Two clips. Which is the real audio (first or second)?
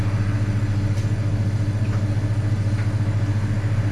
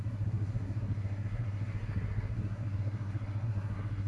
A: first